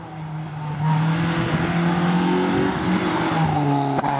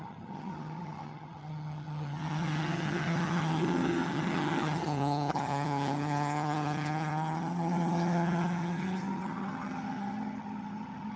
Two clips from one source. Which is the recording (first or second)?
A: first